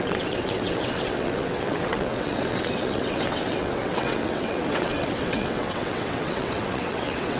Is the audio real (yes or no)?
no